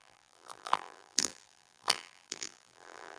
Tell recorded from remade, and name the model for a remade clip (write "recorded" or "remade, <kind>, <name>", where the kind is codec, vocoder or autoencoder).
remade, vocoder, BigVGAN v2